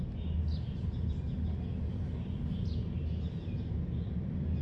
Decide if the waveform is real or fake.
real